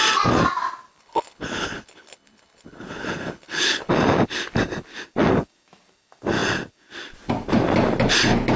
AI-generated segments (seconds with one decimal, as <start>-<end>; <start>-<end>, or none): 1.0-3.9